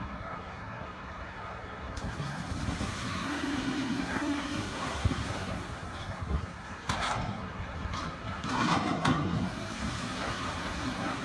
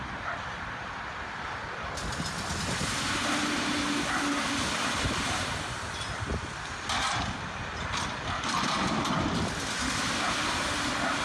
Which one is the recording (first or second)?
second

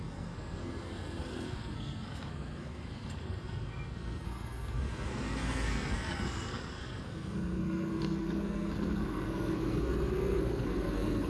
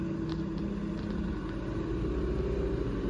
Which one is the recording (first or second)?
second